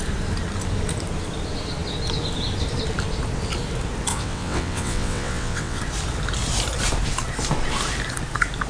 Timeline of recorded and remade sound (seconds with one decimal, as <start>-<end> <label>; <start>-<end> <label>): 0.0-4.1 recorded; 4.1-5.8 remade; 5.8-8.7 recorded